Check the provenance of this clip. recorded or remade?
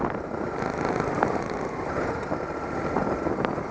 recorded